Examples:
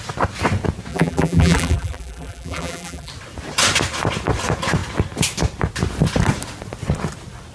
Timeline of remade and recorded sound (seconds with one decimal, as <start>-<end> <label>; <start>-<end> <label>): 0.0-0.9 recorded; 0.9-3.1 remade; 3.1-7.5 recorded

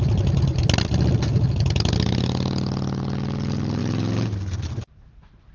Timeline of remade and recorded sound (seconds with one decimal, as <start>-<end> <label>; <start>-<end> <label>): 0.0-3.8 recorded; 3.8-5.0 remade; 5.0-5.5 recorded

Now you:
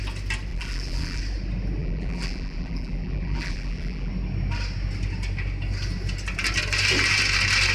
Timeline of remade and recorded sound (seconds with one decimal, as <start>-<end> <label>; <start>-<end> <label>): 0.0-0.5 recorded; 0.5-1.2 remade; 1.2-1.8 recorded; 1.8-4.1 remade; 4.1-7.7 recorded